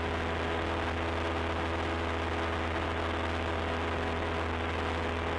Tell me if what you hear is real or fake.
real